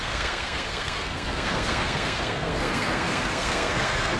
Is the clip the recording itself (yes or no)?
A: no